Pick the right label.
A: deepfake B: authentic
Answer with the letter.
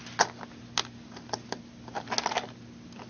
B